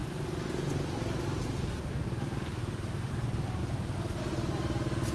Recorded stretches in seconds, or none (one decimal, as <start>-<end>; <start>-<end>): 0.0-5.1